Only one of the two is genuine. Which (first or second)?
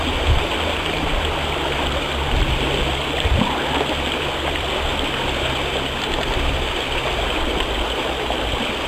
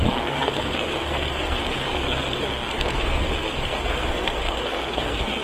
first